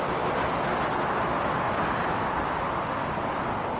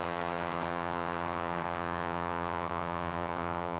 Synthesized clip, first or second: second